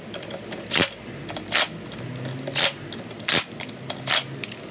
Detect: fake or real real